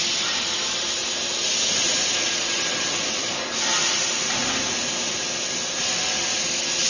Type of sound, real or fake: real